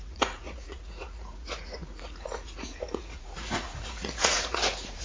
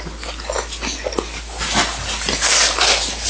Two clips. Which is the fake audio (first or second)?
first